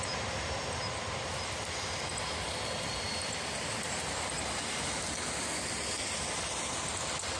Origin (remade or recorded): recorded